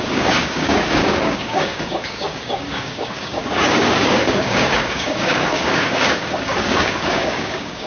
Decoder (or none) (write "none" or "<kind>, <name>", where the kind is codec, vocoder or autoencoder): codec, DAC